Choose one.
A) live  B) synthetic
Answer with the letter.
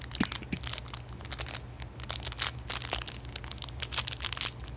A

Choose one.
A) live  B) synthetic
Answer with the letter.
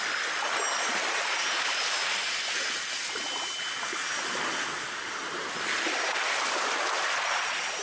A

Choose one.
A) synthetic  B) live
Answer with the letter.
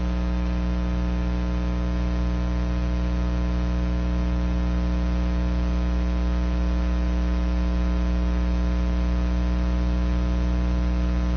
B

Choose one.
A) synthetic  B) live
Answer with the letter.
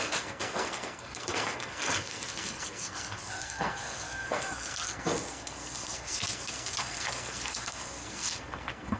A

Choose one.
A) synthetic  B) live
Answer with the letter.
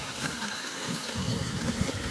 A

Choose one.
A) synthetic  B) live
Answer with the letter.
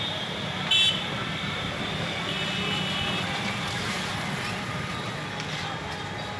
B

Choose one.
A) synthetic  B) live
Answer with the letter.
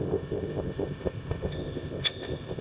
A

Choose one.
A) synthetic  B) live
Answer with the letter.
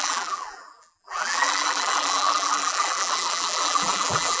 A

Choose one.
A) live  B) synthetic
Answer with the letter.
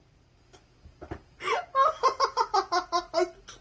A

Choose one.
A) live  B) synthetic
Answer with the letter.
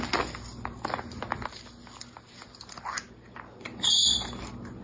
A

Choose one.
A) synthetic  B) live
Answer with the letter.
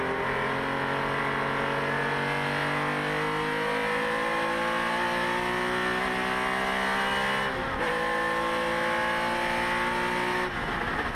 B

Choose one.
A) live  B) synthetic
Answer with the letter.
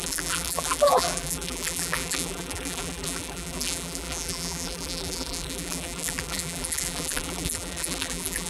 B